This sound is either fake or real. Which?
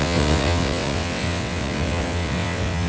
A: fake